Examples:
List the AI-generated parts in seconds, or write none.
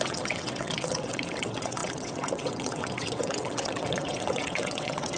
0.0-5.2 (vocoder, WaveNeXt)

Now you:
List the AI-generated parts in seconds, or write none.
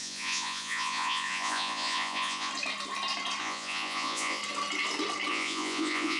0.0-2.5 (vocoder, Vocos); 3.4-4.4; 5.3-6.2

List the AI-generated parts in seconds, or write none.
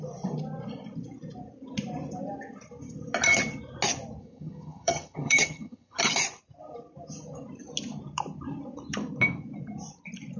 4.2-6.0 (vocoder, HiFi-GAN)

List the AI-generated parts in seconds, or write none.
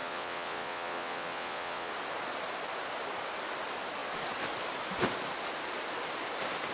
0.0-1.9 (vocoder, WaveNeXt)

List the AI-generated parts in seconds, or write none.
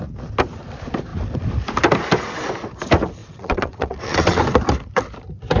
3.2-4.4 (vocoder, WaveNeXt)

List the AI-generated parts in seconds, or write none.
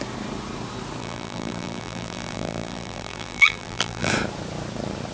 1.0-4.1 (vocoder, BigVGAN v2)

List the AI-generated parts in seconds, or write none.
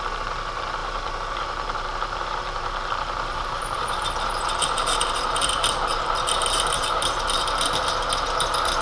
0.8-5.5 (vocoder, BigVGAN v2); 5.9-7.8